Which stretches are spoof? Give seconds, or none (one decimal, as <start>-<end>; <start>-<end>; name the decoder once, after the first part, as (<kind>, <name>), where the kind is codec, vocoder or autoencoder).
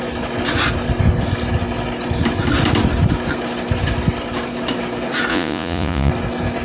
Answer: 5.3-6.1 (vocoder, Vocos)